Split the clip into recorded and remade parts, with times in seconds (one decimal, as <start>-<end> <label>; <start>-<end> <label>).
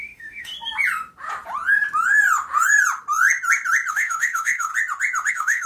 0.0-0.5 remade; 0.5-3.9 recorded; 3.9-4.7 remade; 4.7-5.3 recorded; 5.3-5.7 remade